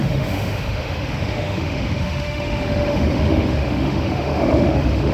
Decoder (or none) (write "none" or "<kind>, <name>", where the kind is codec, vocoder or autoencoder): autoencoder, DAC-VAE